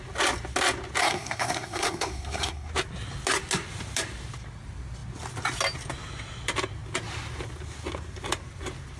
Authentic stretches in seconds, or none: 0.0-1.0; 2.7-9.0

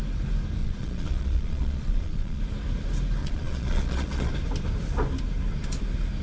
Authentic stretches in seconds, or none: 0.0-0.6; 2.4-3.2; 4.3-6.2

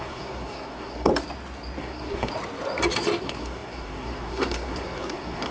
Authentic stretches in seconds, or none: 1.1-1.8; 2.3-3.2

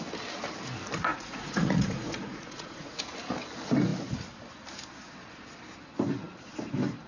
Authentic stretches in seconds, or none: 0.0-1.1; 3.0-7.1

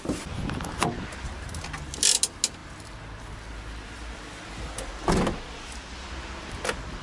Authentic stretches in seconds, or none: 0.0-7.0